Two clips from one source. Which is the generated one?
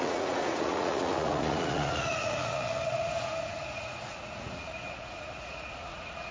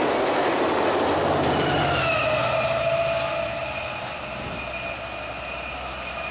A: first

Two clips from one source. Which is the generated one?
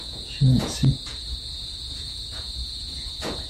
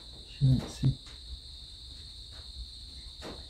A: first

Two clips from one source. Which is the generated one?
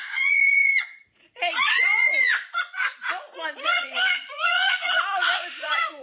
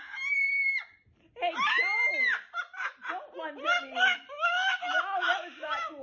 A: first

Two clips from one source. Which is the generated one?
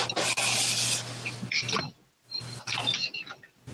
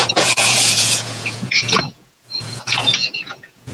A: second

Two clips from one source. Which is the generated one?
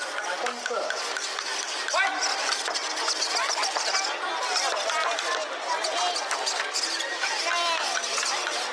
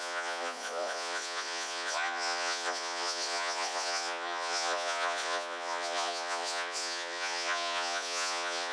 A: second